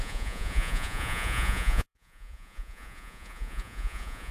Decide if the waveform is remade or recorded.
remade